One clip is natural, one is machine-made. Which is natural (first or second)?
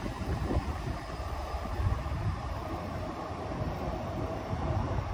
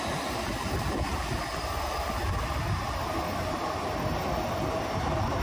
second